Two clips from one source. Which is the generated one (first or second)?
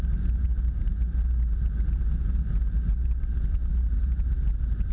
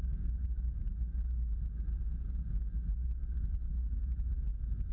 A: second